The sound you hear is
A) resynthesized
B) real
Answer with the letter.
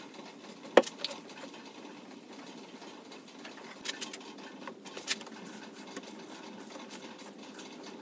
B